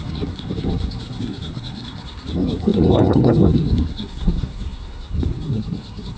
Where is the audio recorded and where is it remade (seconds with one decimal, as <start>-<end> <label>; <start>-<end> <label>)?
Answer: 0.0-6.2 remade

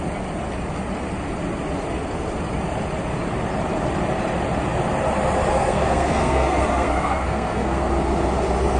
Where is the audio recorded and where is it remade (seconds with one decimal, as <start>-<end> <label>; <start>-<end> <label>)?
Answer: 0.0-5.5 recorded; 5.5-7.9 remade; 7.9-8.8 recorded

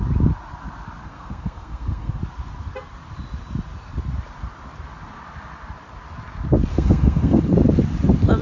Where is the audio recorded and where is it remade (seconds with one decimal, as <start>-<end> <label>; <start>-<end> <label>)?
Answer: 0.0-1.0 recorded; 1.0-2.2 remade; 2.2-6.7 recorded; 6.7-7.4 remade; 7.4-8.4 recorded

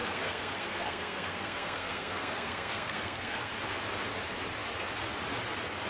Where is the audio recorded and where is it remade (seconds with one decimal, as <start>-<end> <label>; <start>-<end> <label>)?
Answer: 0.0-3.5 remade; 3.5-5.9 recorded

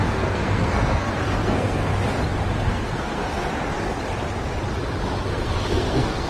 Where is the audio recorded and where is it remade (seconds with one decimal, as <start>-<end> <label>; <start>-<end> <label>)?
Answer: 0.0-1.9 remade; 1.9-2.5 recorded; 2.5-3.5 remade; 3.5-5.3 recorded; 5.3-6.3 remade

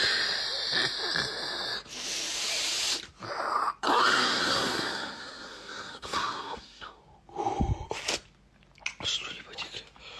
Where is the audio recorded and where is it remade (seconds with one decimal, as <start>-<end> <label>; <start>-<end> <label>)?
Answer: 0.0-3.8 recorded; 3.8-7.0 remade; 7.0-10.2 recorded

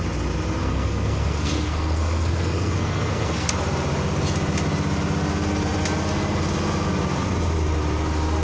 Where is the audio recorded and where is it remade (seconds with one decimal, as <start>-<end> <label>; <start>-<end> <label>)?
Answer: 0.0-0.6 recorded; 0.6-3.5 remade; 3.5-8.4 recorded

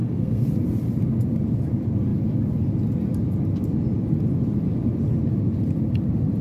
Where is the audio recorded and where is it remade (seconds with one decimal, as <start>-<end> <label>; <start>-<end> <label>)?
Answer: 0.0-0.5 remade; 0.5-6.4 recorded